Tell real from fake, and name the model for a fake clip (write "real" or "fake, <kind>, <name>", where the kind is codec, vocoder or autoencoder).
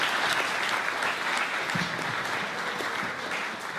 real